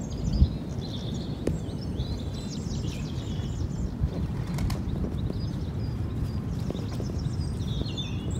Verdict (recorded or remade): recorded